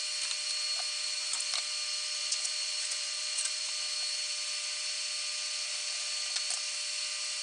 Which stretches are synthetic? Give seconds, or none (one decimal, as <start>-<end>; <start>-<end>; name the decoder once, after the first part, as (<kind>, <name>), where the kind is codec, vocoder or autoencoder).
2.2-3.7 (vocoder, Vocos)